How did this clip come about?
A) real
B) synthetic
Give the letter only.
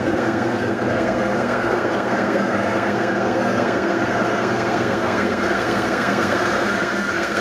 B